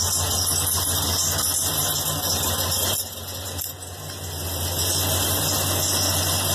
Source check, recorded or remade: recorded